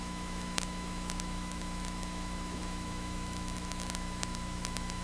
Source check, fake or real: fake